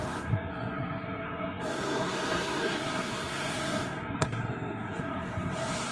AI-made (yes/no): yes